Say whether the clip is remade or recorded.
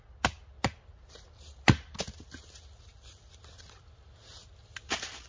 recorded